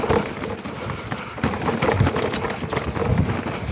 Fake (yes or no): no